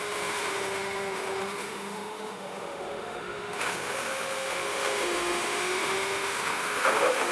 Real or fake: fake